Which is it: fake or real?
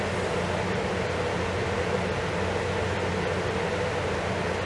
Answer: real